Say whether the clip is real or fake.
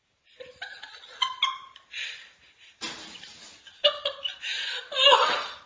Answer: real